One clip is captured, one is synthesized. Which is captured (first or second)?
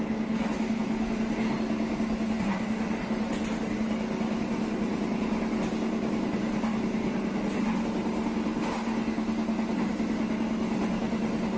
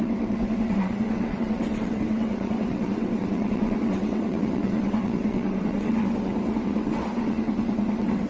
first